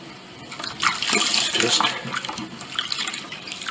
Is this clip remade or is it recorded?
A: recorded